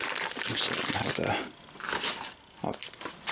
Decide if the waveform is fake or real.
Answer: real